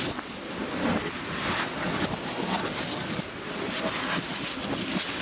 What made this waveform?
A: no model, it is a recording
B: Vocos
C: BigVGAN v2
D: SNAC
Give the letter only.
A